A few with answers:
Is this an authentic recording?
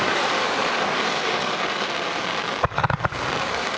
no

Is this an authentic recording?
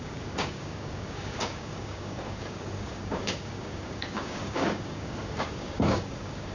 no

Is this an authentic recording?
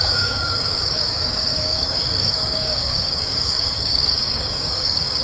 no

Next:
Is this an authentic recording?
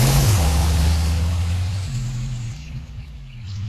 no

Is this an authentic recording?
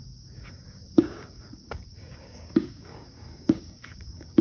no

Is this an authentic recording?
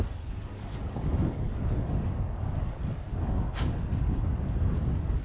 no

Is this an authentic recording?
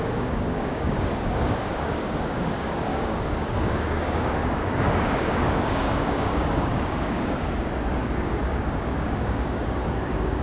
no